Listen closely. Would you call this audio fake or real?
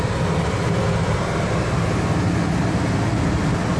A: real